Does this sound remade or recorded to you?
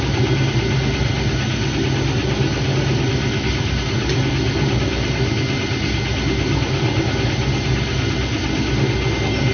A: recorded